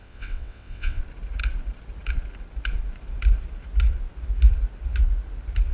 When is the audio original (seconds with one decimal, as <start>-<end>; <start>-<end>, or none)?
1.0-5.7